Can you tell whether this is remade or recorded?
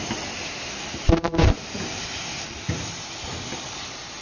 recorded